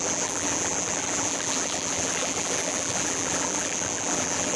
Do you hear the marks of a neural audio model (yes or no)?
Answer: yes